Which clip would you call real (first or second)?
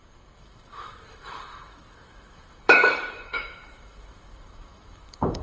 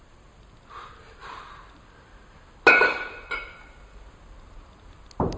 second